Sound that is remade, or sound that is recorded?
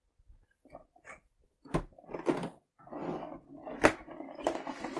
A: recorded